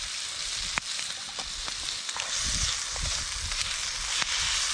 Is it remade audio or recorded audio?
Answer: recorded